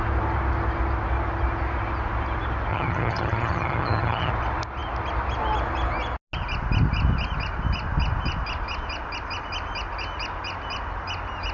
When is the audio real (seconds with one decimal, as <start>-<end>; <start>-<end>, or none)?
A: 0.0-2.7; 4.3-11.5